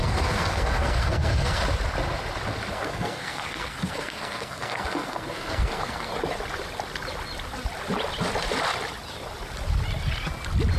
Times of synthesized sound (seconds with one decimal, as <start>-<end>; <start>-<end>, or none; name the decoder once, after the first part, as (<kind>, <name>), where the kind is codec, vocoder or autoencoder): 0.0-1.6 (codec, SNAC); 2.7-6.1